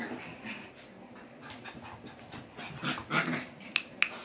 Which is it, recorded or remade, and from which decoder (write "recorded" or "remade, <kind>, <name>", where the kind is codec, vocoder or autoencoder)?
recorded